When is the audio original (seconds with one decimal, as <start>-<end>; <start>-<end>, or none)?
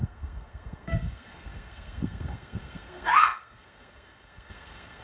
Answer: none